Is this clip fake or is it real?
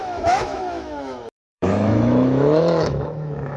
fake